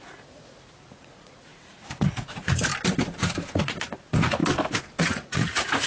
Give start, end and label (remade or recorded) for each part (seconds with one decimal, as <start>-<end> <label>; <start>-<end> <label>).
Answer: 0.0-2.7 remade; 2.7-3.6 recorded; 3.6-4.4 remade; 4.4-5.0 recorded; 5.0-5.9 remade